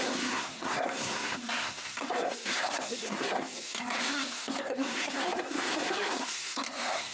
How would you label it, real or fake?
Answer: fake